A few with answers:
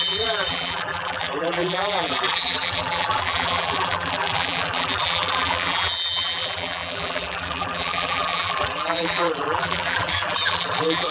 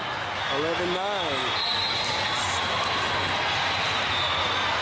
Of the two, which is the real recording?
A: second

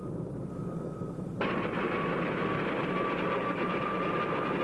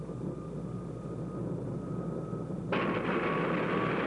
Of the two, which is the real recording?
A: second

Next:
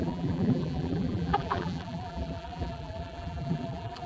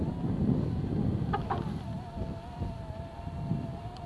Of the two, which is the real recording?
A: second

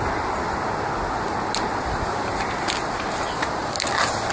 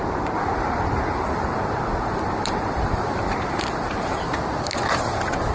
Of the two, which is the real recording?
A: first